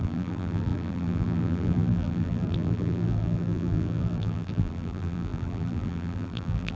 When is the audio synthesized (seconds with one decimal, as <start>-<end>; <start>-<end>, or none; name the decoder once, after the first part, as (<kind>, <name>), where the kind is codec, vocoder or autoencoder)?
0.0-6.7 (vocoder, BigVGAN v2)